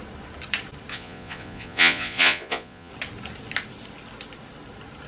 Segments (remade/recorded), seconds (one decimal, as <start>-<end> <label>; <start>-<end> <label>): 0.0-0.9 recorded; 0.9-2.9 remade; 2.9-5.1 recorded